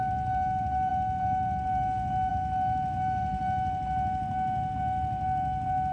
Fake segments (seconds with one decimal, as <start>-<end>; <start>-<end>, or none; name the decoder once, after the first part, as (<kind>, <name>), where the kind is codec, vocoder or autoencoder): none